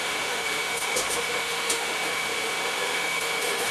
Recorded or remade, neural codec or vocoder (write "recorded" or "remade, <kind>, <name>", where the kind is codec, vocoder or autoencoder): remade, autoencoder, DAC-VAE